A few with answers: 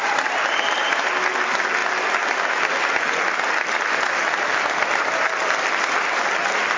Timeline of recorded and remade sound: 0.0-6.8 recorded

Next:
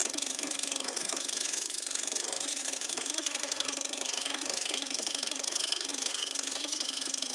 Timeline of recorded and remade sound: 0.0-7.3 remade

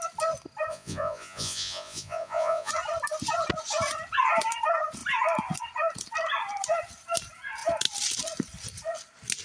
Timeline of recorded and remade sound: 0.0-0.7 recorded; 0.7-2.7 remade; 2.7-9.4 recorded

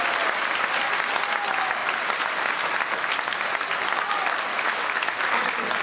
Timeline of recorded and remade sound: 0.0-4.5 recorded; 4.5-5.2 remade; 5.2-5.8 recorded

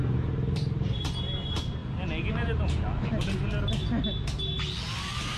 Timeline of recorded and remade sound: 0.0-5.4 recorded